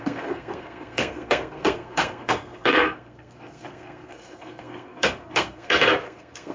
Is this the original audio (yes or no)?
no